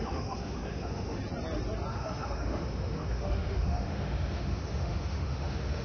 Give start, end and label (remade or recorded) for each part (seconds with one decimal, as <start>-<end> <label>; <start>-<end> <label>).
0.0-1.2 remade; 1.2-1.9 recorded; 1.9-5.8 remade